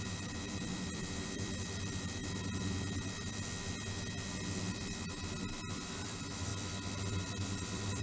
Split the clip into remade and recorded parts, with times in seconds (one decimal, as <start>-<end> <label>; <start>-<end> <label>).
0.0-2.2 remade; 2.2-5.6 recorded; 5.6-6.5 remade; 6.5-7.2 recorded; 7.2-8.0 remade